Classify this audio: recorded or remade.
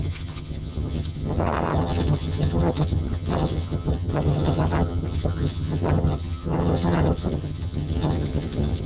remade